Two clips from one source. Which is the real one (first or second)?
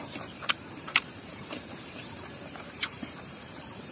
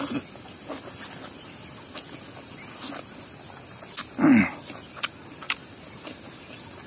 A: second